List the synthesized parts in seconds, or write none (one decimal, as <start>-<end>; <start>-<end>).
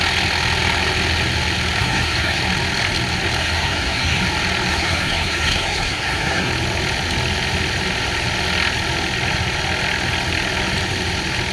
1.8-2.4; 3.4-4.2; 4.7-6.5